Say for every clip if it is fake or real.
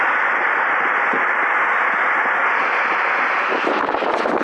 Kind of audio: real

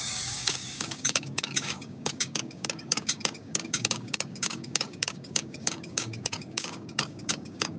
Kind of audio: fake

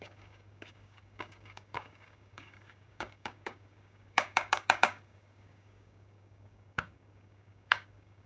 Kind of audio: fake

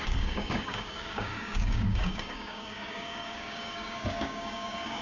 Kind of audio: fake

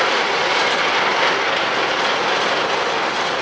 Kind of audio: real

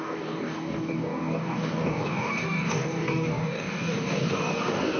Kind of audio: fake